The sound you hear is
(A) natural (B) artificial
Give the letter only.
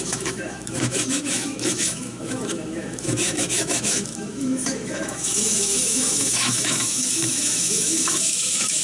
B